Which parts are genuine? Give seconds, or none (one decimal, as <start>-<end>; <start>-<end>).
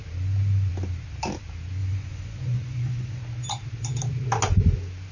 0.0-1.8; 3.2-5.1